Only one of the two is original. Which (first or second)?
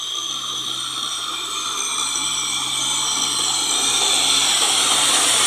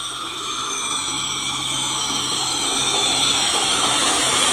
first